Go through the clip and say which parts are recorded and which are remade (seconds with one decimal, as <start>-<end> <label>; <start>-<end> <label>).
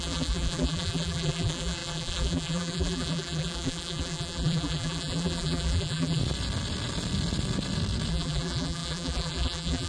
0.0-6.2 remade; 6.2-8.1 recorded; 8.1-9.9 remade